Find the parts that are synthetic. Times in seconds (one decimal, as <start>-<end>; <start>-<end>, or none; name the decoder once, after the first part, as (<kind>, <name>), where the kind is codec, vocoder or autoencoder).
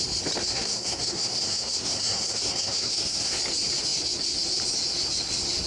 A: 0.4-3.4 (codec, SNAC)